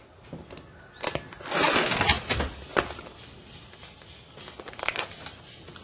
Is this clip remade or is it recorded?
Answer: recorded